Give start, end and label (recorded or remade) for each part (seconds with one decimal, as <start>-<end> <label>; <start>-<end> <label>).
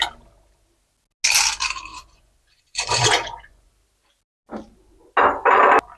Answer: 0.0-1.9 recorded; 1.9-3.7 remade; 3.7-6.0 recorded